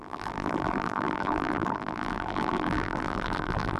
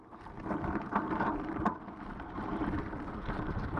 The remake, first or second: first